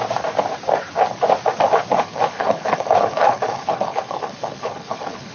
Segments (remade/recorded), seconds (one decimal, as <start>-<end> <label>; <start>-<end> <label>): 0.0-2.0 recorded; 2.0-5.3 remade

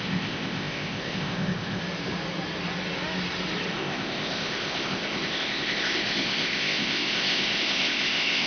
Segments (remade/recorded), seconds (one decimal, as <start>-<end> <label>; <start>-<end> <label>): 0.0-1.8 remade; 1.8-3.7 recorded; 3.7-8.5 remade

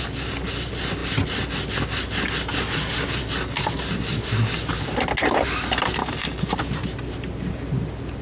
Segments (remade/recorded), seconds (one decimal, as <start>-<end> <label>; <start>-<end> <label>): 0.0-6.0 recorded; 6.0-6.5 remade; 6.5-8.2 recorded

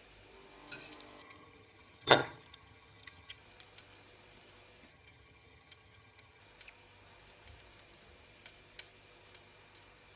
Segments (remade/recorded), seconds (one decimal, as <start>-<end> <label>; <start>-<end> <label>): 0.0-1.2 recorded; 1.2-3.4 remade; 3.4-4.9 recorded; 4.9-6.4 remade; 6.4-10.2 recorded

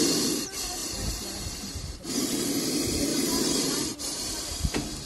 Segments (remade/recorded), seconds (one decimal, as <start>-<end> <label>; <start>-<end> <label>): 0.0-0.8 recorded; 0.8-2.1 remade; 2.1-3.1 recorded; 3.1-4.3 remade; 4.3-5.1 recorded